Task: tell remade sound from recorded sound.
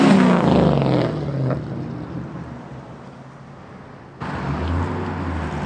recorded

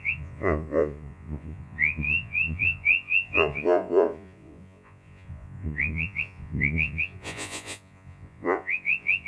remade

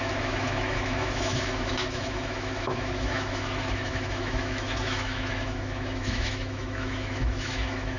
remade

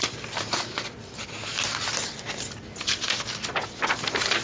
recorded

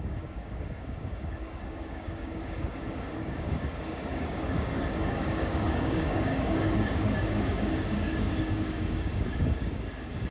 remade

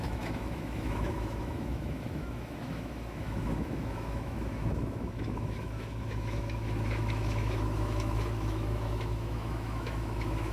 remade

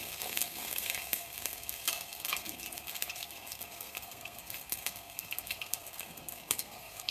remade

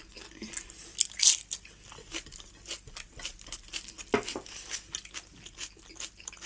recorded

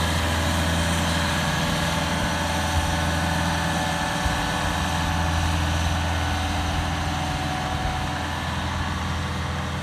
recorded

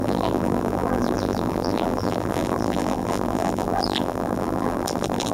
remade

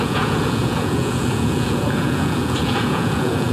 remade